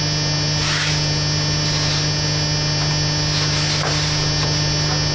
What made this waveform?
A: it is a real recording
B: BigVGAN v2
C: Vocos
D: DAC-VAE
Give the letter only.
A